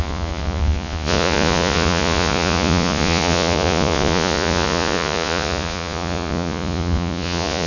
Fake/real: fake